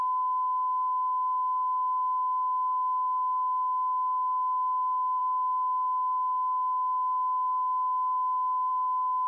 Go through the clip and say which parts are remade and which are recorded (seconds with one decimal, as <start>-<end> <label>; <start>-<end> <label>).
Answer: 0.0-9.3 recorded

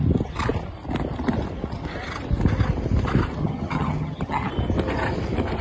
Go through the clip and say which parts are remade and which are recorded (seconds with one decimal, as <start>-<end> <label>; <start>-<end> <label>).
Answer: 0.0-3.4 recorded; 3.4-4.5 remade; 4.5-5.6 recorded

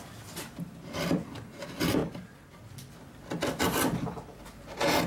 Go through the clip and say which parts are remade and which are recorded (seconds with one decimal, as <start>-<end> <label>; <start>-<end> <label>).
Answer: 0.0-5.1 recorded

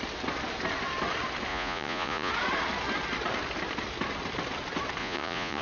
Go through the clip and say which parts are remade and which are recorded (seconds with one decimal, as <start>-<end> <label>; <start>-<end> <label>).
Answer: 0.0-1.5 recorded; 1.5-2.3 remade; 2.3-5.0 recorded; 5.0-5.6 remade

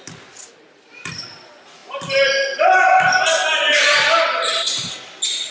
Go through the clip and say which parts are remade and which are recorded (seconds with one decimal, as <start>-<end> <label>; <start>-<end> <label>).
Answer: 0.0-5.5 recorded

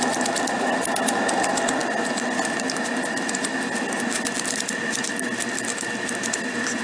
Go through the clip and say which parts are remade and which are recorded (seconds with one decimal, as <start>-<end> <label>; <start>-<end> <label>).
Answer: 0.0-6.8 recorded

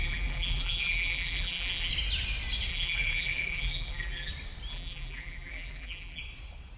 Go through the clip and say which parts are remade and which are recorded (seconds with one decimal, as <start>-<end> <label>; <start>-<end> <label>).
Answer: 0.0-1.9 remade; 1.9-2.7 recorded; 2.7-4.3 remade; 4.3-4.7 recorded; 4.7-6.2 remade; 6.2-6.8 recorded